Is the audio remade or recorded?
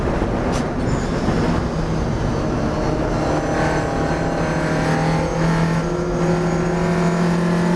recorded